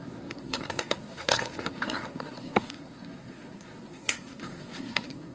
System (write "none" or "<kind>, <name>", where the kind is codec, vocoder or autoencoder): codec, SNAC